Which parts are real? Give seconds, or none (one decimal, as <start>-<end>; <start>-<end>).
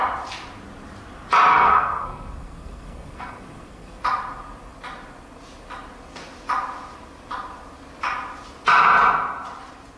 0.0-1.5; 4.0-10.0